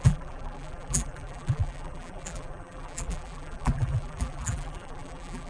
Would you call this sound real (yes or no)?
no